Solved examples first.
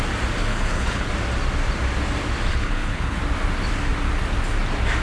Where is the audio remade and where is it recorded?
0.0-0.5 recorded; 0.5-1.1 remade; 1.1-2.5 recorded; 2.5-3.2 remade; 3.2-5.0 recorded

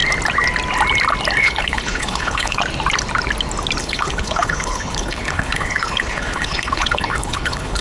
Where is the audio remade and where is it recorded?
0.0-1.4 recorded; 1.4-2.6 remade; 2.6-3.8 recorded; 3.8-7.8 remade